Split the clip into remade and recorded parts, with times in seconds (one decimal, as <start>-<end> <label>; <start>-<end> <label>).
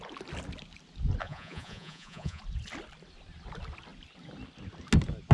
0.0-1.2 recorded; 1.2-2.4 remade; 2.4-5.3 recorded